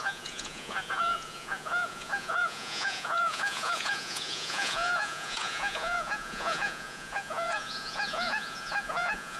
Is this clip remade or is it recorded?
remade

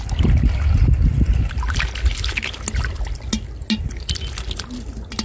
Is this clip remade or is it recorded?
recorded